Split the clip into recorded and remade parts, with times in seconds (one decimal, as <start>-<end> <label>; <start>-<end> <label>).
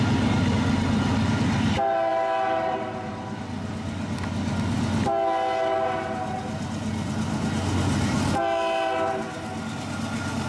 0.0-10.5 recorded